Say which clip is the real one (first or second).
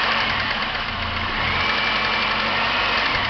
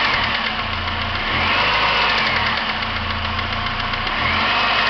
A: second